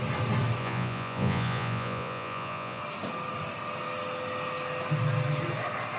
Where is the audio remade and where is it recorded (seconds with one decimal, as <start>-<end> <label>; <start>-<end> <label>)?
0.0-0.6 recorded; 0.6-2.8 remade; 2.8-6.0 recorded